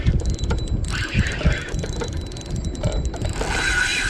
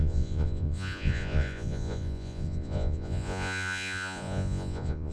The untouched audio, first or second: first